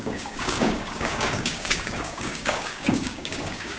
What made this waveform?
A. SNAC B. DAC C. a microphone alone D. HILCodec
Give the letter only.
B